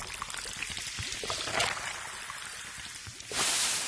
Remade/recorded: recorded